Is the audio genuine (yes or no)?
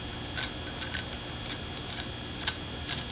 yes